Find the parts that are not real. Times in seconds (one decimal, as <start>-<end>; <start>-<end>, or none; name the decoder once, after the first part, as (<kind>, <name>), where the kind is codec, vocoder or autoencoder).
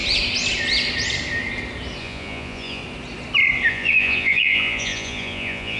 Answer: 2.0-2.8 (vocoder, Vocos); 3.7-5.8